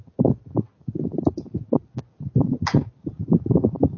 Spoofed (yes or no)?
no